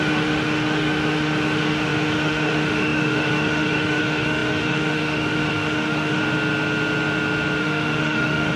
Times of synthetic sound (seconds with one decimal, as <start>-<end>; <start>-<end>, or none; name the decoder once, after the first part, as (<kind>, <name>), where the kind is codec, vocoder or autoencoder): 0.0-6.2 (autoencoder, DAC-VAE); 7.6-8.6